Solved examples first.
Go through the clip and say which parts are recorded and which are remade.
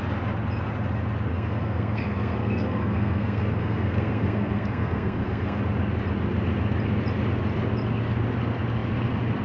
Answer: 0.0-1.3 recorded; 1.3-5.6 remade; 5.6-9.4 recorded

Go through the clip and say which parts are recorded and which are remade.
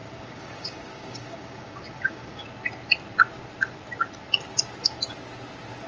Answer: 0.0-2.4 remade; 2.4-5.9 recorded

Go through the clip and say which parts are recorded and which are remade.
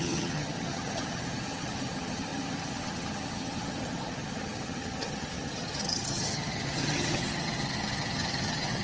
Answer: 0.0-8.8 remade